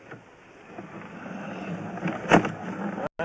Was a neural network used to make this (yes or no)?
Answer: no